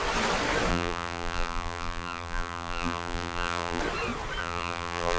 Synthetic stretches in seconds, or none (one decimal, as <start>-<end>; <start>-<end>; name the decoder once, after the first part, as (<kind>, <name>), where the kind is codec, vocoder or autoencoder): 0.7-3.8 (vocoder, BigVGAN v2); 4.4-5.2